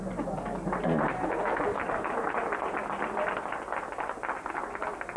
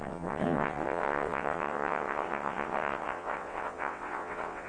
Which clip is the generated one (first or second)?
second